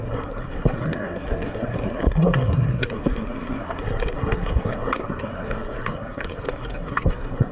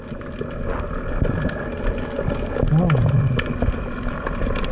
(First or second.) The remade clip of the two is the first